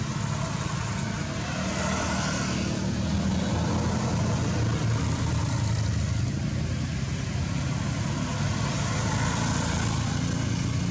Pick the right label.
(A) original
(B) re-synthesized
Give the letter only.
A